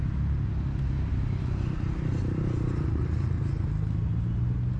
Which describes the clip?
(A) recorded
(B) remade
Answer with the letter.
A